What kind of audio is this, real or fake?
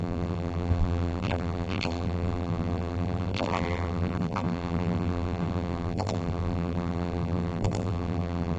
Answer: fake